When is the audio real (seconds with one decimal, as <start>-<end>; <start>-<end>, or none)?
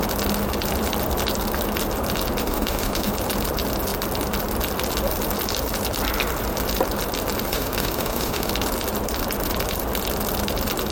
0.0-2.4; 3.1-7.5; 8.5-10.9